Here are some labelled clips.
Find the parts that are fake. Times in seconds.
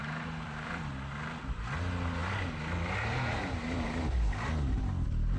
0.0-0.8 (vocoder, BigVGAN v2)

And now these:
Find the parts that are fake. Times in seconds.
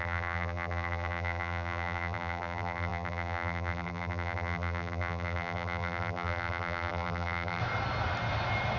0.0-7.6 (vocoder, BigVGAN v2)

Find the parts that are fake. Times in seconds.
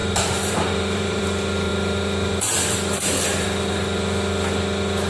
0.0-1.2 (vocoder, BigVGAN v2)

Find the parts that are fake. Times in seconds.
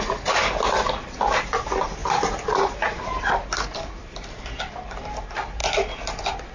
2.0-4.7 (vocoder, BigVGAN v2)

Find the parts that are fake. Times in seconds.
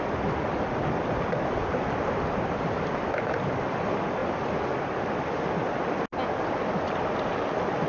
none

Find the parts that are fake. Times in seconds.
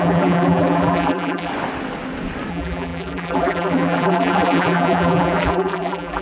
0.0-1.5 (vocoder, BigVGAN v2); 2.5-6.2